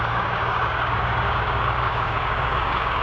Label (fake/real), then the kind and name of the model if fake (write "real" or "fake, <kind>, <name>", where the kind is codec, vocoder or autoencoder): fake, codec, DAC